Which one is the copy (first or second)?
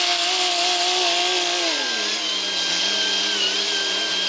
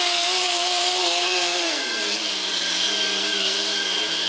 second